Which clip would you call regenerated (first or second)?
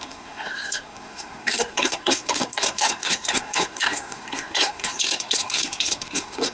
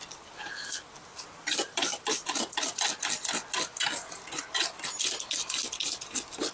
first